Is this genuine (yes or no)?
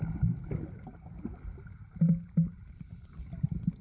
yes